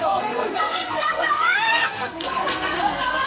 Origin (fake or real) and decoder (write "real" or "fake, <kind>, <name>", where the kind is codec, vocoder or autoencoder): fake, codec, SNAC